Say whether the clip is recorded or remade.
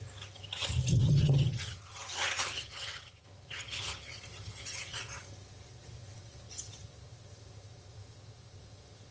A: remade